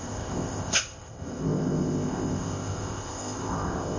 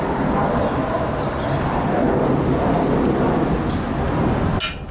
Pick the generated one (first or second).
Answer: first